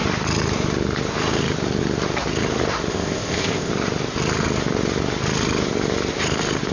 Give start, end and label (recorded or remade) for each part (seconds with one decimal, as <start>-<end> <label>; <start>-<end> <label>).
0.0-2.9 recorded; 2.9-3.7 remade; 3.7-6.7 recorded